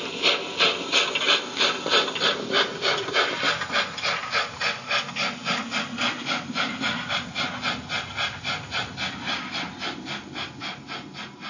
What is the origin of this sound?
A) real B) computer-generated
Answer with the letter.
A